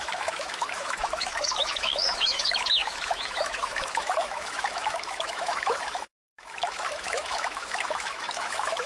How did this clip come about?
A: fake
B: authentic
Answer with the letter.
A